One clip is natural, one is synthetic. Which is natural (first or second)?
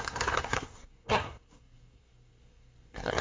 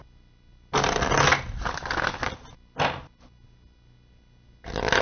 second